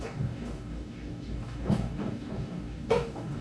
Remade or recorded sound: remade